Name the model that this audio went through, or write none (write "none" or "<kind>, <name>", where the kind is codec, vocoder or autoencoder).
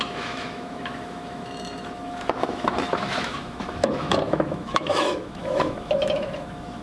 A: autoencoder, DAC-VAE